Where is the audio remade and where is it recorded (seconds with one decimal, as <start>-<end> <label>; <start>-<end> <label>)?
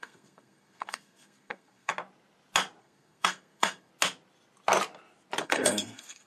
0.0-1.9 remade; 1.9-2.8 recorded; 2.8-3.9 remade; 3.9-5.4 recorded; 5.4-6.3 remade